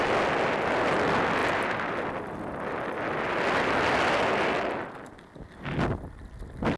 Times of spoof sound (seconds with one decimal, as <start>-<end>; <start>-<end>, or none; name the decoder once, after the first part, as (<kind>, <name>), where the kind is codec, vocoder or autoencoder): none